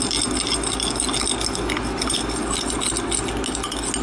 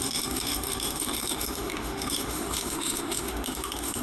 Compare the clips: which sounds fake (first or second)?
second